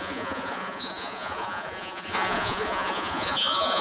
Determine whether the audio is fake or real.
fake